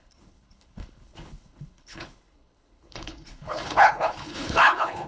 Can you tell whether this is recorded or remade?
remade